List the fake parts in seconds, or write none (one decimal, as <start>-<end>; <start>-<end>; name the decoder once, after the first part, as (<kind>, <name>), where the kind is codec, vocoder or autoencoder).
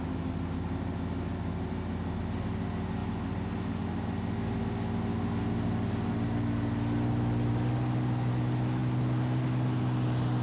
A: none